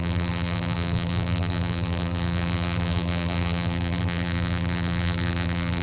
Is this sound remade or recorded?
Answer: remade